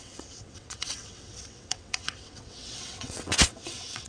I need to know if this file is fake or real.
fake